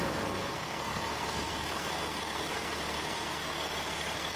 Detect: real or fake fake